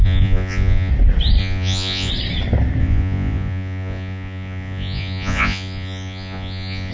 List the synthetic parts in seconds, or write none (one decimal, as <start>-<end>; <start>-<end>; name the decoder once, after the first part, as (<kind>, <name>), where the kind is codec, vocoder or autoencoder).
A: 0.0-0.9 (vocoder, Vocos); 1.4-2.1; 2.8-6.9